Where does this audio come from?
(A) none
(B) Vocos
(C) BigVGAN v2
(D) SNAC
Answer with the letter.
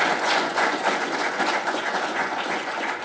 B